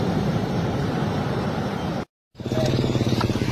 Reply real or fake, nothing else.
fake